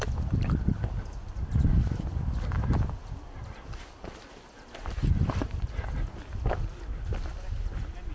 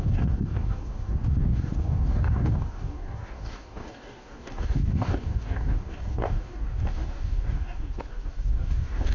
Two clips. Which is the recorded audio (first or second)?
first